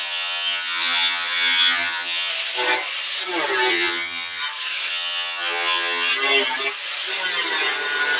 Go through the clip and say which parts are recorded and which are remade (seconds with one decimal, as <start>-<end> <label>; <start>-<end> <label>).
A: 0.0-2.3 remade; 2.3-3.7 recorded; 3.7-4.4 remade; 4.4-4.9 recorded; 4.9-6.1 remade; 6.1-8.2 recorded